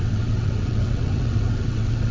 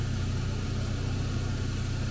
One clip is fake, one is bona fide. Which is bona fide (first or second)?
second